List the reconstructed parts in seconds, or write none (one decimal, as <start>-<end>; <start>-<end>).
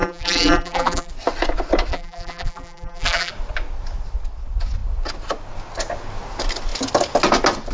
0.0-1.1; 1.9-3.3